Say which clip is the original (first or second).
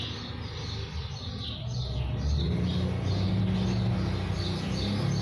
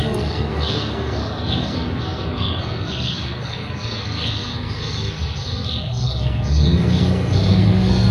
first